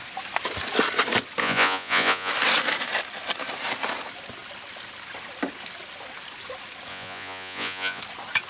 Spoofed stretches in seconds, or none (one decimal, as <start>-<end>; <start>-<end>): 1.4-2.3; 6.9-8.0